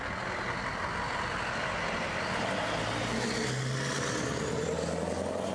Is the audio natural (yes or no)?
yes